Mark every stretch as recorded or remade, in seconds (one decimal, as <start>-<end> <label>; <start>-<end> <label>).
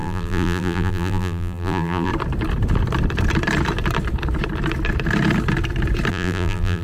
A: 0.0-2.1 remade; 2.1-6.1 recorded; 6.1-6.8 remade